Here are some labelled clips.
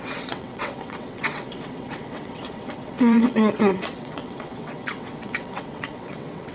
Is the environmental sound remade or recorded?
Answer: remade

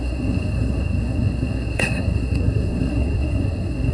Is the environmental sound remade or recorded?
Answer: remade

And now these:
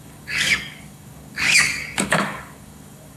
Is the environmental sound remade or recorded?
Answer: remade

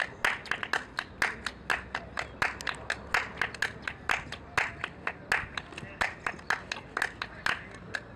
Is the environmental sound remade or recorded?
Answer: recorded